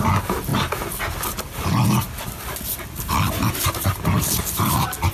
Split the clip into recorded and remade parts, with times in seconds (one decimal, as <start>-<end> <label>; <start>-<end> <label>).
0.0-5.1 recorded